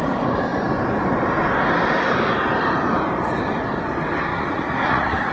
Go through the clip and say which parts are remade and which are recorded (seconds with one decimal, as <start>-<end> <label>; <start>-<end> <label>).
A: 0.0-4.3 recorded; 4.3-5.3 remade